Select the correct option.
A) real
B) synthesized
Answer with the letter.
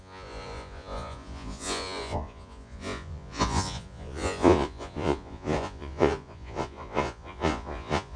B